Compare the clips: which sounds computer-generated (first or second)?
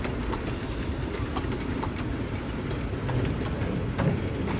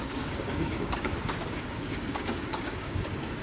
second